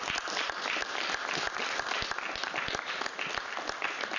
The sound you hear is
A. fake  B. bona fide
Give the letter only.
B